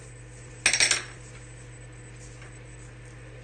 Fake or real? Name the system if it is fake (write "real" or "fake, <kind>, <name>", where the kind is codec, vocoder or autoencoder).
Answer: real